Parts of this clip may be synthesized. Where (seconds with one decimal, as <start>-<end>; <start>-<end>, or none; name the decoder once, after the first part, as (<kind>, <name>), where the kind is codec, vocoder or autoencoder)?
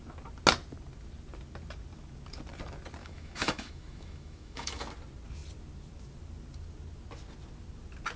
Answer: 3.0-4.8 (autoencoder, DAC-VAE)